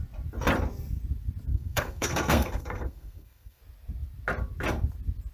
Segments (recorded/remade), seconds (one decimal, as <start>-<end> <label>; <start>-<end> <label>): 0.0-1.5 recorded; 1.5-3.6 remade; 3.6-5.3 recorded

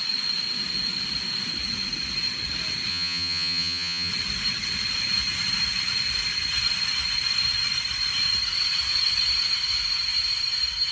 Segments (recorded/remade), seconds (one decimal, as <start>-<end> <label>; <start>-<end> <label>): 0.0-2.9 recorded; 2.9-4.1 remade; 4.1-10.9 recorded

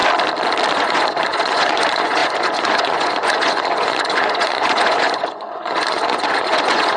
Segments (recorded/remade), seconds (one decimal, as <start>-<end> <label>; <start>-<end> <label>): 0.0-0.7 recorded; 0.7-7.0 remade

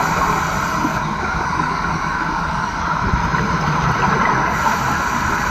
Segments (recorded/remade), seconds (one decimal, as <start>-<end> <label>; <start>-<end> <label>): 0.0-0.9 recorded; 0.9-2.8 remade; 2.8-5.5 recorded

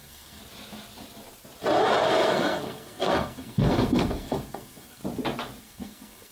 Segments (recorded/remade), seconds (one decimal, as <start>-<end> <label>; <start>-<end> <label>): 0.0-0.4 remade; 0.4-2.1 recorded; 2.1-5.0 remade; 5.0-5.6 recorded; 5.6-6.3 remade

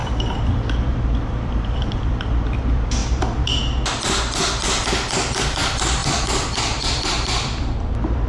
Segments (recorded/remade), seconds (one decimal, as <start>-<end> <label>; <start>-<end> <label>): 0.0-0.9 recorded; 0.9-3.0 remade; 3.0-5.4 recorded; 5.4-6.0 remade; 6.0-6.9 recorded; 6.9-8.3 remade

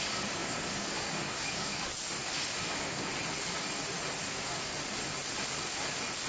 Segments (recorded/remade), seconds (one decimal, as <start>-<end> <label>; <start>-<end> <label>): 0.0-1.9 remade; 1.9-2.7 recorded; 2.7-3.1 remade; 3.1-4.3 recorded; 4.3-4.7 remade; 4.7-6.3 recorded